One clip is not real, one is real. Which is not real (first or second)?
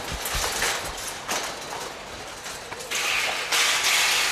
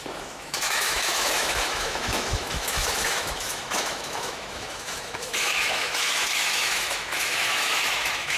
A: second